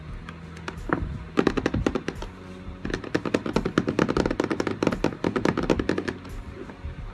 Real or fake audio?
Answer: real